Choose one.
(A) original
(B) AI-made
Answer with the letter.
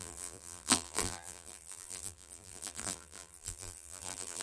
B